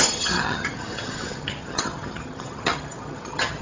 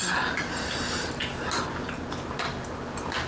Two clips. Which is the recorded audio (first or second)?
second